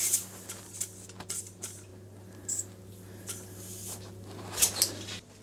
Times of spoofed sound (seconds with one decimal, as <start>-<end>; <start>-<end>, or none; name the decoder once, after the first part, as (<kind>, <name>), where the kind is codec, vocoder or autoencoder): none